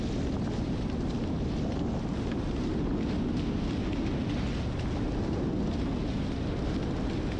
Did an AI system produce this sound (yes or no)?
no